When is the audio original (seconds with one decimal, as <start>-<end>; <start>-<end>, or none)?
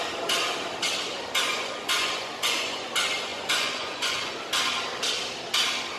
0.0-1.5; 2.9-3.3; 4.3-6.0